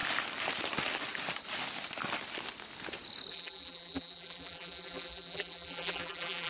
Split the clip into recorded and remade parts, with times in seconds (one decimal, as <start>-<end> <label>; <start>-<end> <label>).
0.0-3.3 recorded; 3.3-6.5 remade